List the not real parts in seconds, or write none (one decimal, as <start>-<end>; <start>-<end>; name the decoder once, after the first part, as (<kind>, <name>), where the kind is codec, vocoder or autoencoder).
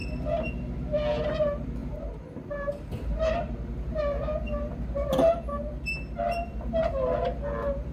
1.4-7.9 (vocoder, BigVGAN v2)